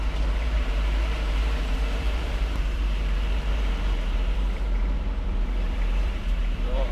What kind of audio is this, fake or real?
fake